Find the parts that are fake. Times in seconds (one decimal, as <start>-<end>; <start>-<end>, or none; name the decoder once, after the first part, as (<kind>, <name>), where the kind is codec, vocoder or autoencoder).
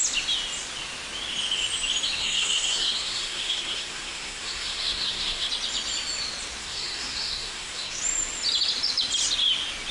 2.2-5.5 (codec, SNAC); 6.6-8.0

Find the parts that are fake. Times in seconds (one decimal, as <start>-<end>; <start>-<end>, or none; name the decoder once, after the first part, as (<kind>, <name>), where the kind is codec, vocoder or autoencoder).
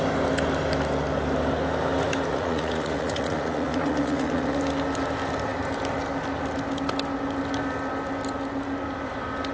2.3-4.6 (vocoder, Vocos)